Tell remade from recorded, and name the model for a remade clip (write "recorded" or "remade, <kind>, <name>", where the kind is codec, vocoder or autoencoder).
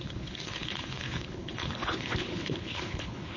remade, codec, HILCodec